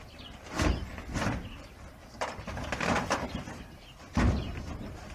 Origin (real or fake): real